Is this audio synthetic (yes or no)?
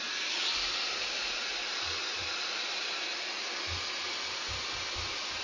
no